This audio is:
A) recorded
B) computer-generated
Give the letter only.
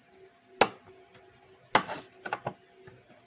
A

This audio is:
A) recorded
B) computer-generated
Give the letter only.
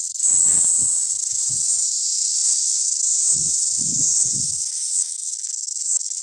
B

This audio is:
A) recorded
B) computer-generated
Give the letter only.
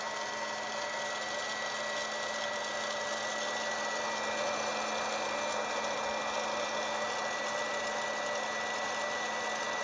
A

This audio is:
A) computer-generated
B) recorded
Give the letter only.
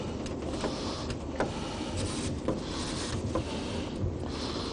B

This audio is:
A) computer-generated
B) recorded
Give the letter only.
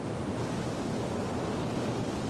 B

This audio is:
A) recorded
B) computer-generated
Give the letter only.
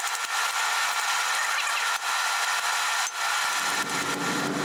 A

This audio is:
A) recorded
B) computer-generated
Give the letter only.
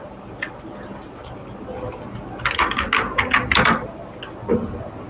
A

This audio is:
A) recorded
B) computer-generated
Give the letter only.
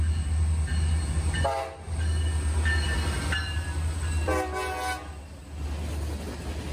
A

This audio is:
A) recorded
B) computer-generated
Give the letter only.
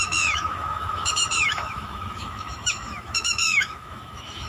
B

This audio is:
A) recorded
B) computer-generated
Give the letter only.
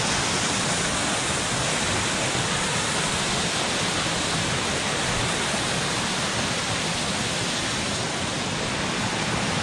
A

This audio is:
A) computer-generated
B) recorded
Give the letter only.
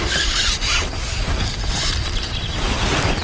B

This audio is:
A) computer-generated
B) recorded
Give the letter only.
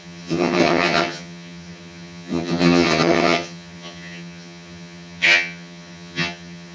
A